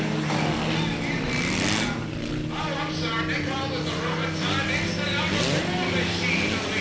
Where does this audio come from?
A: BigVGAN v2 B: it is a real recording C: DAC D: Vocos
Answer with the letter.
B